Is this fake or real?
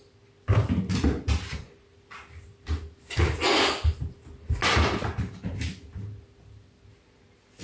real